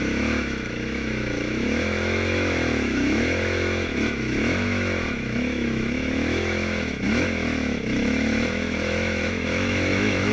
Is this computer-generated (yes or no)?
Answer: yes